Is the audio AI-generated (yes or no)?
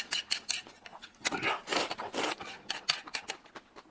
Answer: no